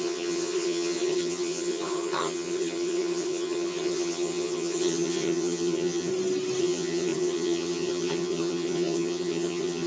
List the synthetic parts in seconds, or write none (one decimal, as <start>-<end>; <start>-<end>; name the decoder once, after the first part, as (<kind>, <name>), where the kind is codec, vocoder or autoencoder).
0.0-6.1 (vocoder, HiFi-GAN); 6.6-9.9